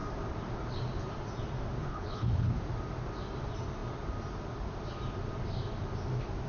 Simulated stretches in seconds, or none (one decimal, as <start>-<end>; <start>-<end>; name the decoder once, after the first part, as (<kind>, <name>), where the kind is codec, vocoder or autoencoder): 1.8-2.6 (codec, HILCodec)